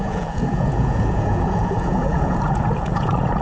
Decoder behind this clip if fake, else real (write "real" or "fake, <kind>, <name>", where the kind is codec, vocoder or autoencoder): fake, vocoder, Vocos